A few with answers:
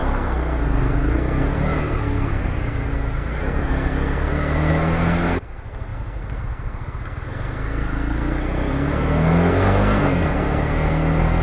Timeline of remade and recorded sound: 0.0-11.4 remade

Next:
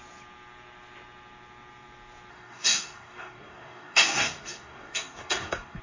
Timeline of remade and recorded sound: 0.0-2.3 recorded; 2.3-5.8 remade

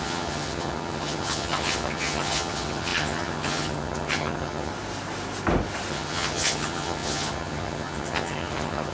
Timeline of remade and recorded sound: 0.0-4.7 remade; 4.7-5.9 recorded; 5.9-8.9 remade

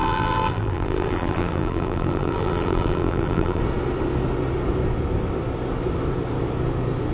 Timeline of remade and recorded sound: 0.0-3.6 remade; 3.6-7.1 recorded

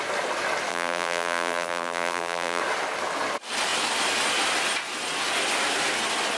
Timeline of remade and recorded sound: 0.0-0.7 recorded; 0.7-2.6 remade; 2.6-6.4 recorded

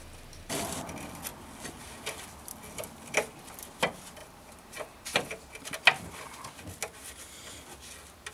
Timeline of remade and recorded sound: 0.0-4.2 recorded; 4.2-5.6 remade; 5.6-8.3 recorded